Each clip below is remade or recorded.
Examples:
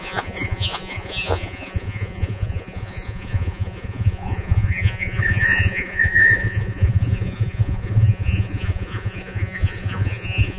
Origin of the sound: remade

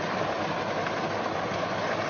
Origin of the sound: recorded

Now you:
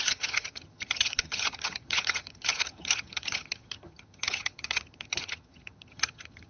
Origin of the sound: remade